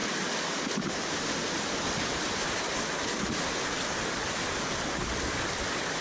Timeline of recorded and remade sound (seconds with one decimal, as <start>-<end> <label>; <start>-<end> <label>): 0.0-6.0 recorded